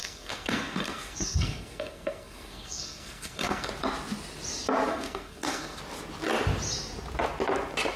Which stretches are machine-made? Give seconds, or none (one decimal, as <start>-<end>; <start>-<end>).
0.0-3.7; 4.9-5.8